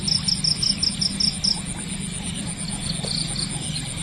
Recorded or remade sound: recorded